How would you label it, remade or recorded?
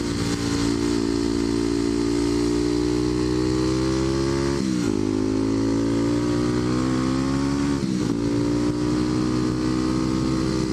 recorded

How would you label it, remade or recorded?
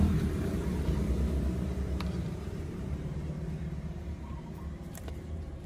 remade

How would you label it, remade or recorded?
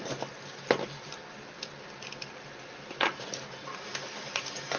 recorded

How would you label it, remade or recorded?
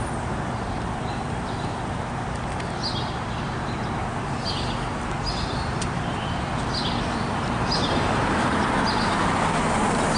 recorded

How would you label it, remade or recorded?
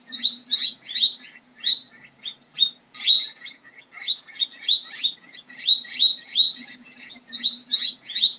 remade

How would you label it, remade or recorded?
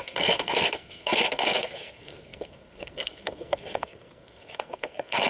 remade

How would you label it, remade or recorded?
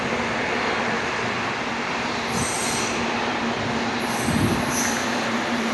recorded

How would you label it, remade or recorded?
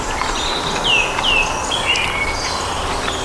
recorded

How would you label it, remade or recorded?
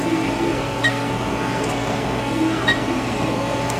remade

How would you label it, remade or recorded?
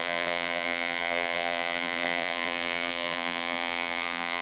remade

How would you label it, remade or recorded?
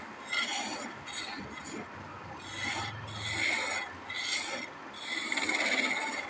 recorded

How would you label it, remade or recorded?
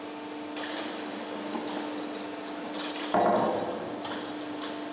recorded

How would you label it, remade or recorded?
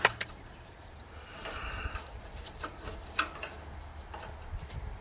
remade